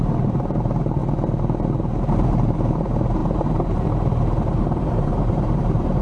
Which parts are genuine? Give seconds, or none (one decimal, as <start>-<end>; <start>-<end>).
1.0-2.0